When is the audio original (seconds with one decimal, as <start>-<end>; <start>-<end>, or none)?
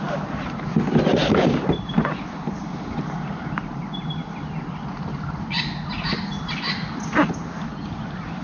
0.0-1.2; 5.6-8.4